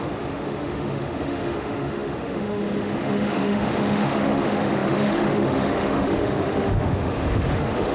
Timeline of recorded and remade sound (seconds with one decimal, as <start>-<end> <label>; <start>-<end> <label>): 0.0-7.9 remade